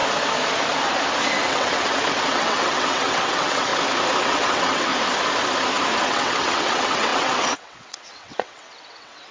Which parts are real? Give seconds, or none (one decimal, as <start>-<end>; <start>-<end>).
0.0-1.5; 3.7-4.2; 4.9-6.0